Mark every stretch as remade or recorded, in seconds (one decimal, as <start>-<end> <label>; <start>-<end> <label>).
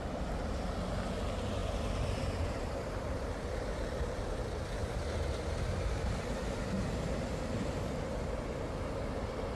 0.0-9.6 recorded